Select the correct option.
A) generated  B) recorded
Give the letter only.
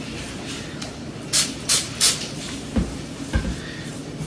B